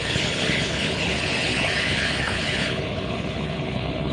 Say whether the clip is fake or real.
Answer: fake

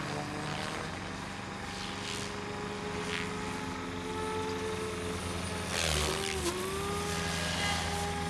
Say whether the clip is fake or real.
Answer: real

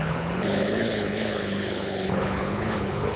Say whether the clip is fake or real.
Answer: fake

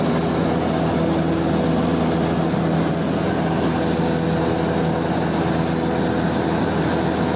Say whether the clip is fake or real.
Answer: real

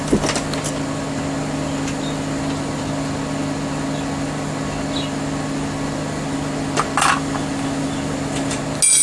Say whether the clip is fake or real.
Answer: real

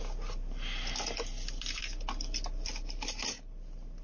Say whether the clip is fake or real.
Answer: real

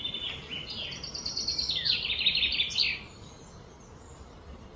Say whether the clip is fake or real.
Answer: real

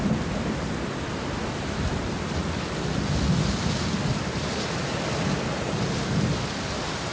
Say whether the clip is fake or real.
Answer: real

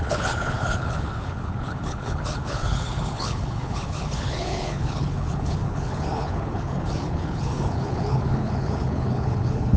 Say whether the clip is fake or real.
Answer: fake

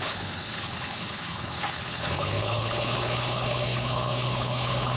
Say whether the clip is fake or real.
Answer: fake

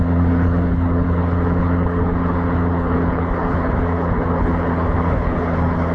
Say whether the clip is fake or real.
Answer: fake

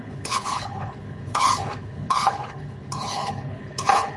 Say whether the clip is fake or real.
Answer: fake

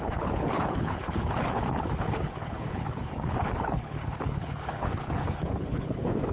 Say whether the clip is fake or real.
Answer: fake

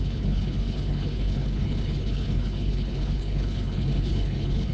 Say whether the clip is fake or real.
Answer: fake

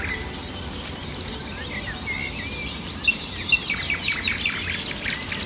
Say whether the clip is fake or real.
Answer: real